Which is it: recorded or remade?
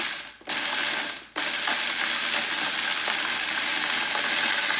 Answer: recorded